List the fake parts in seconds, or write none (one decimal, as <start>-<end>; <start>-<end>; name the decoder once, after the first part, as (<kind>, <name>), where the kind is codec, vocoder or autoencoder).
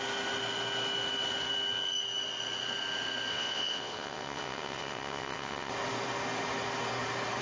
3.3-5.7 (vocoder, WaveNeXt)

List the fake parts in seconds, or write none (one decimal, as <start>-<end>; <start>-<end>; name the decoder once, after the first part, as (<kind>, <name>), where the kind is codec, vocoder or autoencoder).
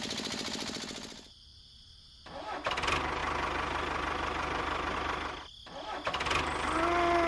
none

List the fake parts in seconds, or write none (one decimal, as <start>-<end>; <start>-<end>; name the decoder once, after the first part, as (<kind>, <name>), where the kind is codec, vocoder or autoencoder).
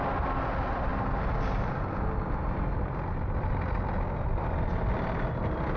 none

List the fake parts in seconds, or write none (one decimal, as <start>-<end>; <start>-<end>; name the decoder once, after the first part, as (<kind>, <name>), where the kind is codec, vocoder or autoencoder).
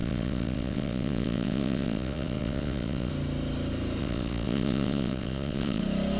0.0-3.1 (vocoder, WaveNeXt); 4.0-5.8